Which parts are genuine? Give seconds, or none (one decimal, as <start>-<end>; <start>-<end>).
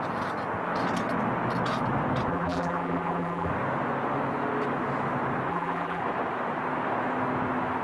0.0-2.3; 3.5-5.5; 6.0-7.8